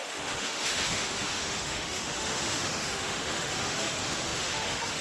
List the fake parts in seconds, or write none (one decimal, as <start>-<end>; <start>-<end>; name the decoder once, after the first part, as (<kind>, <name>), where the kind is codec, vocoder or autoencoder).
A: 0.0-5.0 (autoencoder, DAC-VAE)